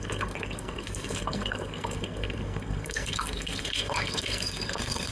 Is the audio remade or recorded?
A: remade